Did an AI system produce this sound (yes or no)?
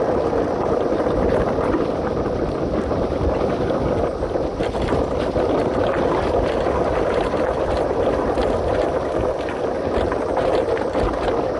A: no